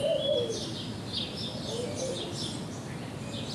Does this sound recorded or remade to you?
recorded